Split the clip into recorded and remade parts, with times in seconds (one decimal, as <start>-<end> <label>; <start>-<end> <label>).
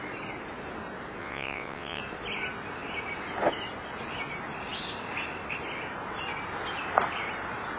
0.0-1.2 recorded; 1.2-2.0 remade; 2.0-7.8 recorded